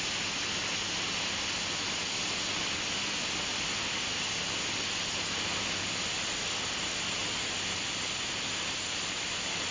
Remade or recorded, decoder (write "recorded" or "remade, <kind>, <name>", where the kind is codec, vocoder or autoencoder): recorded